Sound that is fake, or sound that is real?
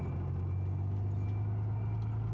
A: real